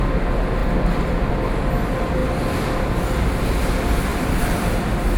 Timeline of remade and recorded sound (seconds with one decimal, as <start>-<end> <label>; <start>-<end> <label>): 0.0-0.6 recorded; 0.6-1.3 remade; 1.3-4.1 recorded; 4.1-4.7 remade; 4.7-5.2 recorded